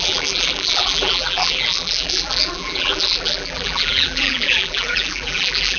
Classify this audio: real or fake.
fake